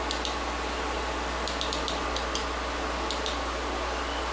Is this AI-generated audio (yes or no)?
no